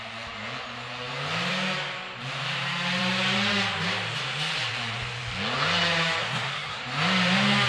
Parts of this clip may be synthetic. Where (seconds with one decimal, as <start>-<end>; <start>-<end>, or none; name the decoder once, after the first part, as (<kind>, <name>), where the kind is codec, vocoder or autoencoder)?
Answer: 6.2-6.8 (codec, SNAC)